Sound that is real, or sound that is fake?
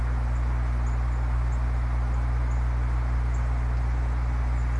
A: real